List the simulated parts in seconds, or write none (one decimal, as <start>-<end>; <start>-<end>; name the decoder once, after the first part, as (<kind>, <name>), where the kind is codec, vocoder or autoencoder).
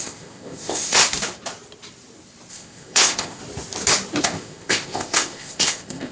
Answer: 0.0-1.0 (codec, ZipCodec); 2.5-3.4; 4.2-6.1